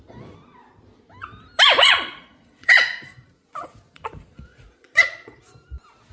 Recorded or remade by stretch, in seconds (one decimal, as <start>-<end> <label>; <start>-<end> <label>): 0.0-1.8 recorded; 1.8-5.4 remade; 5.4-6.1 recorded